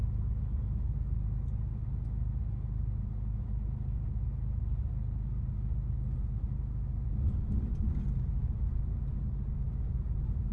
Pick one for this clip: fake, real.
real